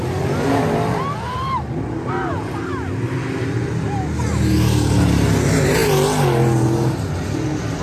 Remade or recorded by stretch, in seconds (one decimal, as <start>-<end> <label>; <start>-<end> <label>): 0.0-7.8 recorded